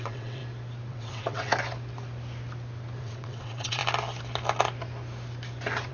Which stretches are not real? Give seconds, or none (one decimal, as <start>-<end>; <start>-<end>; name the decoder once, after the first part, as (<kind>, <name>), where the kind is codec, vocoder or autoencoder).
0.0-0.4 (vocoder, WaveNeXt); 0.9-1.5; 3.0-3.8